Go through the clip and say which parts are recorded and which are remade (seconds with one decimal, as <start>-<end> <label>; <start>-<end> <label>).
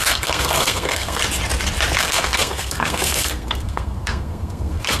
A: 0.0-1.2 remade; 1.2-2.0 recorded; 2.0-5.0 remade